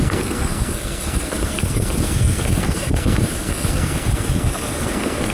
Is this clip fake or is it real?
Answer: fake